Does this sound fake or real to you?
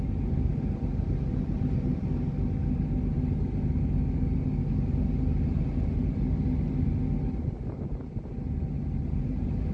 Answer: real